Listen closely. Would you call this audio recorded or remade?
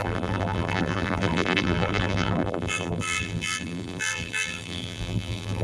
remade